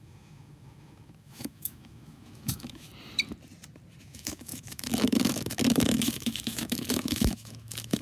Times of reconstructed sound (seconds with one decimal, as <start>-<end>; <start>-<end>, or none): 0.0-2.9; 4.0-8.0